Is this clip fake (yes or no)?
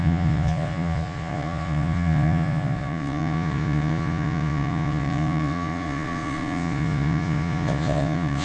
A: yes